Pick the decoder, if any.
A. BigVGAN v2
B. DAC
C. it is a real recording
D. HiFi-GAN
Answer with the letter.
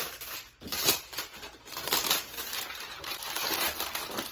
A